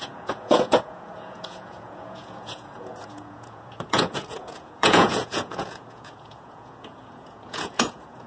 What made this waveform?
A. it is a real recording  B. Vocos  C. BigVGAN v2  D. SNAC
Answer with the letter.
B